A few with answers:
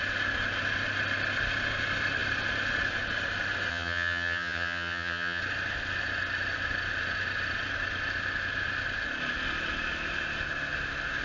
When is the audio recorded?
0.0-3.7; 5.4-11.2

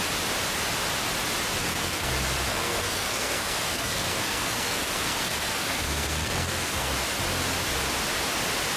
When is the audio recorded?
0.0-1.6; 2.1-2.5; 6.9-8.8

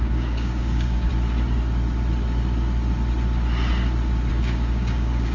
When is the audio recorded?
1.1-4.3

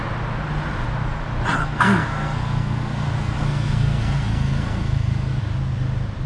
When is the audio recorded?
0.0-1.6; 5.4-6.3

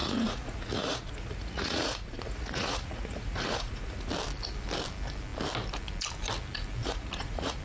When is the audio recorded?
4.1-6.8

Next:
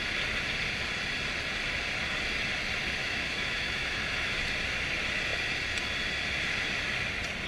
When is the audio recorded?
0.0-3.0; 4.4-7.5

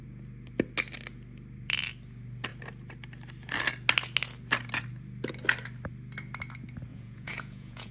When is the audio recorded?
0.0-6.9

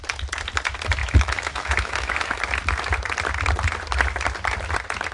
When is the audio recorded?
0.0-1.0; 2.3-5.1